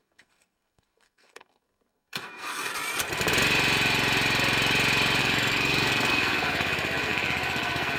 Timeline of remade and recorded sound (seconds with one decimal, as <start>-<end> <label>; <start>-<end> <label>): 0.0-2.7 remade; 2.7-5.2 recorded; 5.2-8.0 remade